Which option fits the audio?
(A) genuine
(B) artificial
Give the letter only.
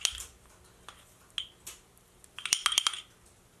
A